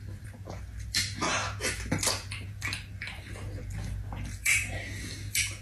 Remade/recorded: remade